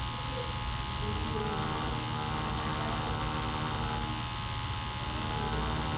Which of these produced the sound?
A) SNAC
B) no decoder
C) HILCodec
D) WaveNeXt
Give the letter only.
B